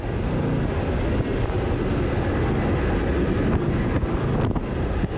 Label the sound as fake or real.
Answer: real